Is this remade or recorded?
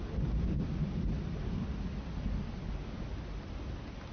recorded